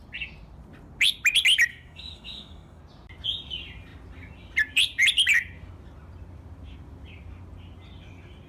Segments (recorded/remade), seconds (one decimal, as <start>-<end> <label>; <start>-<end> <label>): 0.0-1.7 recorded; 1.7-2.8 remade; 2.8-8.5 recorded